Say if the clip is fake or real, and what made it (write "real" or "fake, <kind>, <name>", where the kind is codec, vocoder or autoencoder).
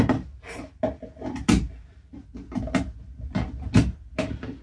real